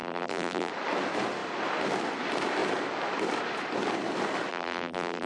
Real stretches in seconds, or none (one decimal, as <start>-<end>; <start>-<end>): 0.7-4.5